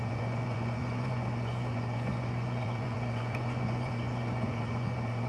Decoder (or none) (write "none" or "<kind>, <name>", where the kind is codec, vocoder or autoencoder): vocoder, Vocos